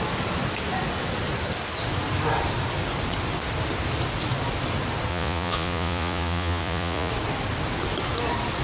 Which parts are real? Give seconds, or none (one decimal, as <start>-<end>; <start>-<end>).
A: 0.0-5.1; 7.1-8.6

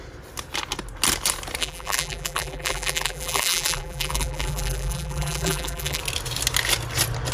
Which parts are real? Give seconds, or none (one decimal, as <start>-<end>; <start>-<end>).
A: 0.0-1.6; 6.0-7.3

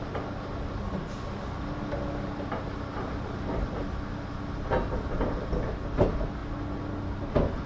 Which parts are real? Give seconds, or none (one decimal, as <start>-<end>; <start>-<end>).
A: 0.0-7.7

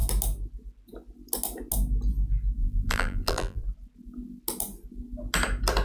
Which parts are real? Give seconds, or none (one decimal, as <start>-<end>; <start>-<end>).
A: 0.0-2.6; 3.6-5.8

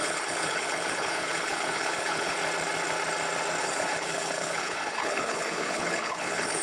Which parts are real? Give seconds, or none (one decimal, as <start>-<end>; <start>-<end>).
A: 2.4-3.6

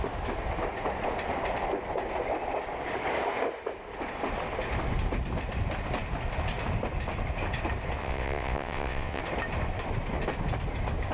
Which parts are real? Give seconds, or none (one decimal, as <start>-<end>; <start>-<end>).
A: 0.0-8.0; 9.2-11.1

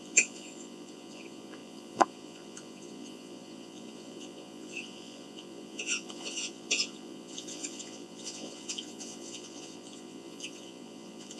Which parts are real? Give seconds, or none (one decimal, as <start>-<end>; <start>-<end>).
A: none